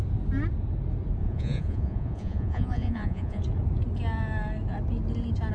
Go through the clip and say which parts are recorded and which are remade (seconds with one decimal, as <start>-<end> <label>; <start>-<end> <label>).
0.0-1.2 recorded; 1.2-3.4 remade; 3.4-5.5 recorded